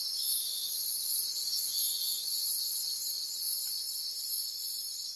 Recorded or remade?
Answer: recorded